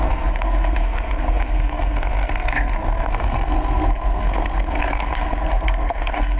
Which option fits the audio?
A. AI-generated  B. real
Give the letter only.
A